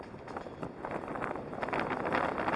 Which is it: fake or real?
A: real